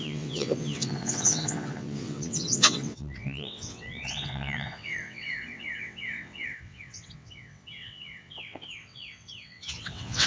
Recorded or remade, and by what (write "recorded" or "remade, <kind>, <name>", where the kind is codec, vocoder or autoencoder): remade, vocoder, WaveNeXt